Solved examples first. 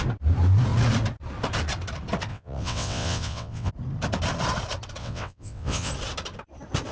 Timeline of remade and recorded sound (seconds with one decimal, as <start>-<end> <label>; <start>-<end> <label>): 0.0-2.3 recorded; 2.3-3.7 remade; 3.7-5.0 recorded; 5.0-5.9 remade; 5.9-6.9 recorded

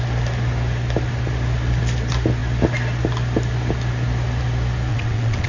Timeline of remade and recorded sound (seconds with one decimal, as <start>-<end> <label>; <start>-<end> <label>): 0.0-4.9 recorded; 4.9-5.5 remade

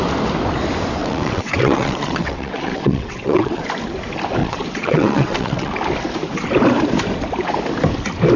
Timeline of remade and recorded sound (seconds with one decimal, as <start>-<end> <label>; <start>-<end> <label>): 0.0-1.0 recorded; 1.0-3.6 remade; 3.6-4.4 recorded; 4.4-5.7 remade; 5.7-8.4 recorded